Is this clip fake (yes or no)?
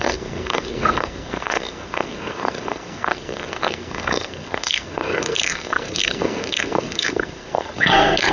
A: yes